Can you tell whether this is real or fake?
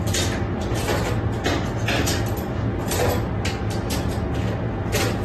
real